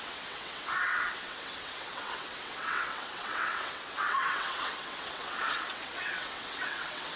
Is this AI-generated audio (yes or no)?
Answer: yes